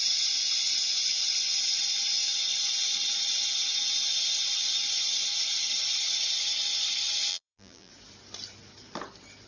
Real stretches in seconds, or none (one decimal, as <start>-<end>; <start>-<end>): 0.0-7.3; 7.9-9.5